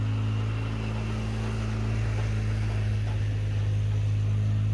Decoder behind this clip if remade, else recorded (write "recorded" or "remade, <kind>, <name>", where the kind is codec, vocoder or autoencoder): recorded